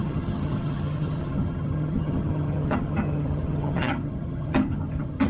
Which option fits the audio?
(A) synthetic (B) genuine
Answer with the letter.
A